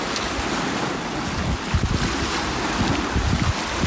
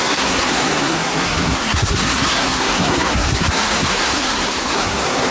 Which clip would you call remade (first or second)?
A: second